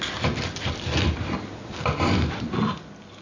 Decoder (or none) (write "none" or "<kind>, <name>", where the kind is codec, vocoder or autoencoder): none